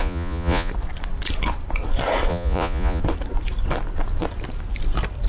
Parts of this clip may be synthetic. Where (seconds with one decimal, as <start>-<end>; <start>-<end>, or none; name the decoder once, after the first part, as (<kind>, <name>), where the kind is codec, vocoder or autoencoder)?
0.0-0.7 (vocoder, Vocos); 2.3-3.0